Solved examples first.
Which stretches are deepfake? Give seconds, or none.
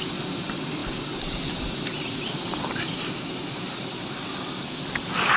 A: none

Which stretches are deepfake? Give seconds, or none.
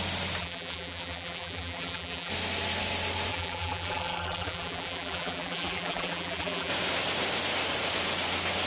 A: 0.4-2.3 (vocoder, BigVGAN v2); 3.3-6.7